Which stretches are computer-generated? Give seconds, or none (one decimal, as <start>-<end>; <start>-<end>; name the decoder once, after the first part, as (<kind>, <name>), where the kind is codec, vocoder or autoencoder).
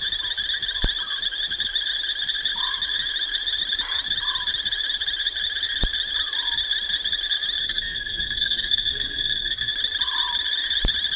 7.6-9.7 (codec, SNAC)